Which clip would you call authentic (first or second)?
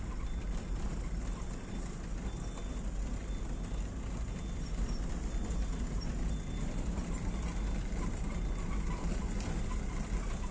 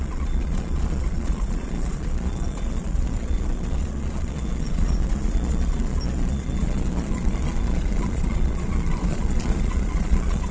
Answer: first